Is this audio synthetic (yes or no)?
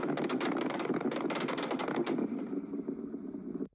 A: no